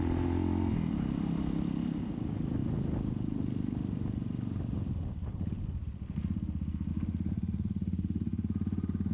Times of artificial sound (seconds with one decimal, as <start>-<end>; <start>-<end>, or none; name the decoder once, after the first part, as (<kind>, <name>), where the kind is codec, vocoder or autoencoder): none